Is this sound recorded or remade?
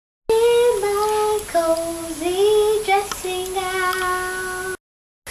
recorded